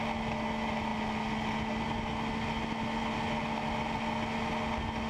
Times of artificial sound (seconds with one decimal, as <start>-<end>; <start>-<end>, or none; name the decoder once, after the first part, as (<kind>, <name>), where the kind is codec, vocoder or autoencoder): none